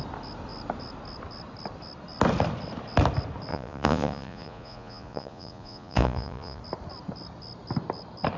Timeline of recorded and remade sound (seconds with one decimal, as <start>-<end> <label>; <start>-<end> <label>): 0.0-3.5 recorded; 3.5-6.6 remade; 6.6-8.4 recorded

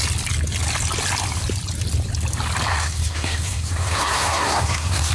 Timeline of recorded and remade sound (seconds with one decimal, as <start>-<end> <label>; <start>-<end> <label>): 0.0-2.7 recorded; 2.7-5.1 remade

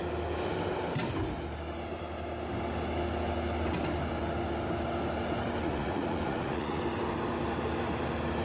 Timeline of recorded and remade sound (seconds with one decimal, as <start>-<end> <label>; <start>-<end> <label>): 0.0-5.6 recorded; 5.6-6.8 remade; 6.8-8.4 recorded